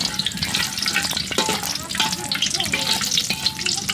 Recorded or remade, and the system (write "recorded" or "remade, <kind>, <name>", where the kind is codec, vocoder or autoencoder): recorded